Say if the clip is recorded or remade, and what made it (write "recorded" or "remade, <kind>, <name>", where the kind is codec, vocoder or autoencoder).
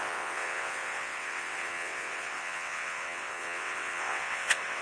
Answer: remade, vocoder, WaveNeXt